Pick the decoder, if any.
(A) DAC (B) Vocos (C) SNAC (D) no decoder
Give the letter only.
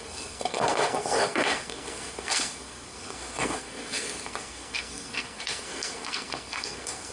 C